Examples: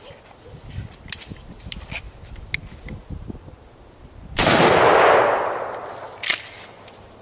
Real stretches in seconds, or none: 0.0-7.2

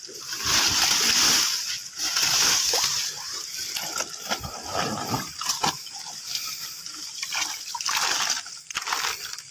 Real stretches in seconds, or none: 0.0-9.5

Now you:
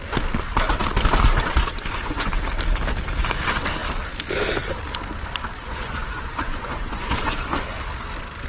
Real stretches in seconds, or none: 0.0-1.5; 2.3-5.5; 7.5-8.5

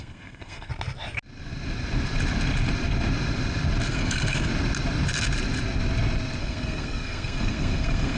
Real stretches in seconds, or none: 0.7-3.9; 4.5-6.4

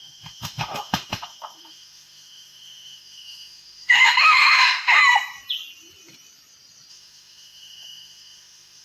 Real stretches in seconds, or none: 5.0-6.9

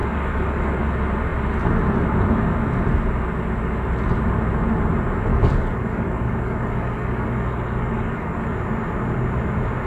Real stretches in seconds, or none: 0.8-5.3; 8.5-9.9

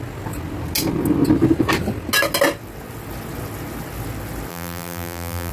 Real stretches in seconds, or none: 0.0-4.5

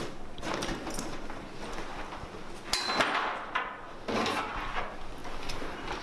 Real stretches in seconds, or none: 0.0-6.0